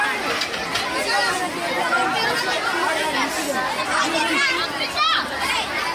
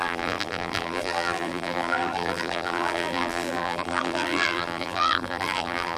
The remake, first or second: second